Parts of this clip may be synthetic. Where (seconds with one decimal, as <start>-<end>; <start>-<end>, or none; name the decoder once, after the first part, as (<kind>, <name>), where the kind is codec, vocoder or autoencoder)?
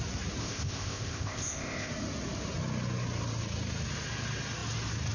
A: 0.4-1.9 (codec, ZipCodec)